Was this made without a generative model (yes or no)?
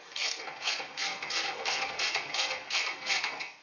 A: no